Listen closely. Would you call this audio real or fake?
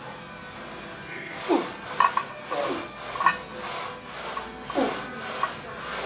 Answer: real